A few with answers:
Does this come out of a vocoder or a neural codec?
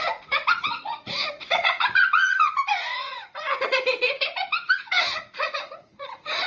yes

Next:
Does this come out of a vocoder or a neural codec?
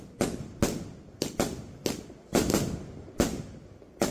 no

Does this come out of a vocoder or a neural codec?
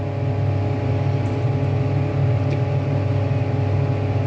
no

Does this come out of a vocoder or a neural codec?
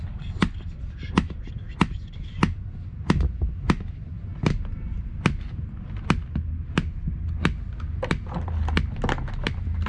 no